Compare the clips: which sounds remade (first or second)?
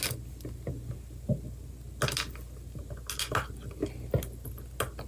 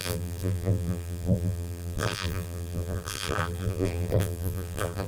second